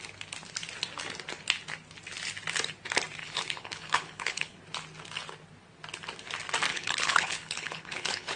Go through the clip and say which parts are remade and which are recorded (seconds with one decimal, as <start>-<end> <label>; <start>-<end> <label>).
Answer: 0.0-3.2 recorded; 3.2-4.6 remade; 4.6-6.7 recorded; 6.7-8.4 remade